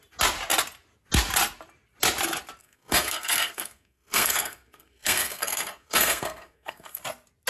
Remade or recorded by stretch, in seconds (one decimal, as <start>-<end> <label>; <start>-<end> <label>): 0.0-2.6 recorded; 2.6-7.0 remade; 7.0-7.5 recorded